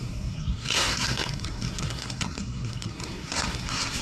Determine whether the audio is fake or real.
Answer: fake